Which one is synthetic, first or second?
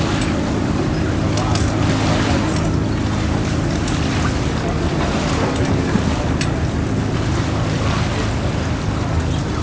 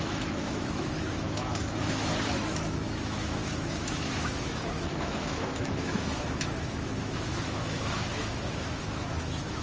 second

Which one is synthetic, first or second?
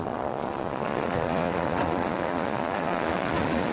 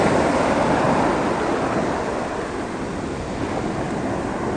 first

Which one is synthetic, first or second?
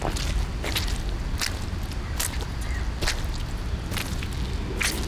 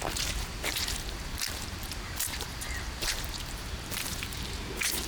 second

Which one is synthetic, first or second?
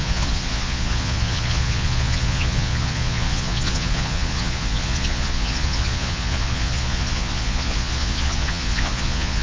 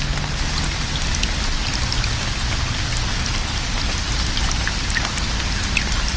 first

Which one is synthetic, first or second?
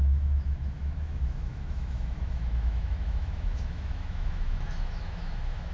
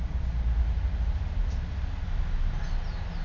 first